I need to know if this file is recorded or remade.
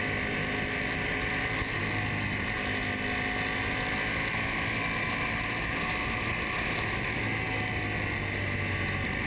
recorded